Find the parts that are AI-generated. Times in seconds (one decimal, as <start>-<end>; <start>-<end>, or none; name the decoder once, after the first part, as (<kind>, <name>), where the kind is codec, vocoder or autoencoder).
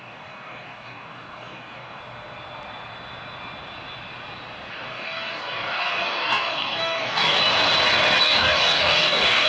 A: 0.0-2.0 (codec, DAC); 4.7-7.4; 8.2-9.5